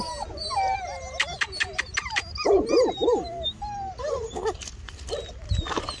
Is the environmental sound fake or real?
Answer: real